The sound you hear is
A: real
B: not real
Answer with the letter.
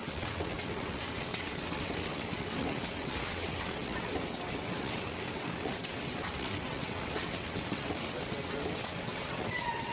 B